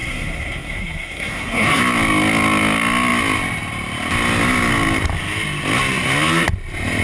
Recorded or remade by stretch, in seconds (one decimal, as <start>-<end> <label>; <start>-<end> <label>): 0.0-1.8 remade; 1.8-7.0 recorded